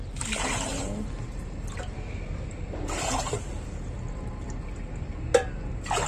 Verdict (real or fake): real